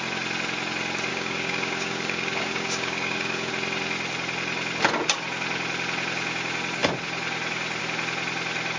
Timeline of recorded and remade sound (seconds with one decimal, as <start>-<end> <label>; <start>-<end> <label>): 0.0-1.1 recorded; 1.1-3.5 remade; 3.5-8.8 recorded